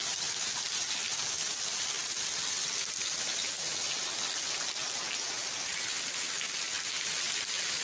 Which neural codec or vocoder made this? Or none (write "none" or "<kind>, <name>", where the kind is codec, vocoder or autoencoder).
none